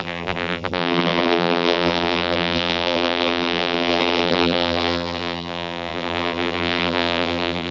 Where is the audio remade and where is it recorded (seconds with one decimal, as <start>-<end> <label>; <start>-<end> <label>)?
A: 0.0-7.7 remade

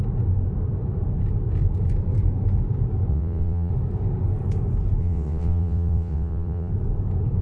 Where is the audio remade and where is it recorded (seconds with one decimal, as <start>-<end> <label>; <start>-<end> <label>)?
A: 0.0-3.1 recorded; 3.1-3.7 remade; 3.7-5.0 recorded; 5.0-6.7 remade; 6.7-7.4 recorded

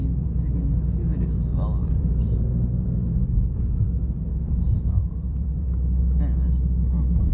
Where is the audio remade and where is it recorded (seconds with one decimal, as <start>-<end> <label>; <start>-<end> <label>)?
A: 0.0-0.6 remade; 0.6-1.8 recorded; 1.8-2.4 remade; 2.4-4.3 recorded; 4.3-6.0 remade; 6.0-7.3 recorded

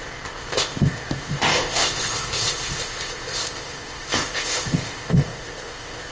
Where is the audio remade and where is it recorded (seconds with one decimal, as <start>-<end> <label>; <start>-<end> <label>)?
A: 0.0-6.1 remade

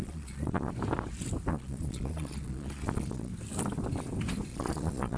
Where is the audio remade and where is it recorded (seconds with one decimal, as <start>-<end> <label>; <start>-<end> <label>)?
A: 0.0-0.7 remade; 0.7-1.5 recorded; 1.5-3.3 remade; 3.3-4.5 recorded; 4.5-5.2 remade

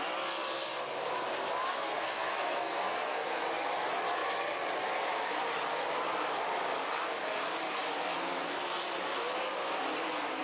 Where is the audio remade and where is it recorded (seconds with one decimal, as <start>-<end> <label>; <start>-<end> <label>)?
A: 0.0-1.7 recorded; 1.7-3.4 remade; 3.4-10.4 recorded